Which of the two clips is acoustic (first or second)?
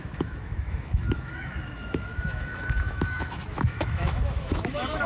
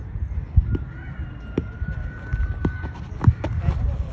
second